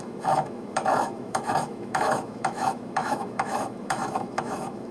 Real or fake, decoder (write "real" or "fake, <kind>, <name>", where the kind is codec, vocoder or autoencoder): fake, autoencoder, DAC-VAE